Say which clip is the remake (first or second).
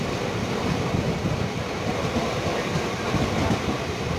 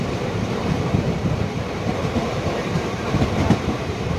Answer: second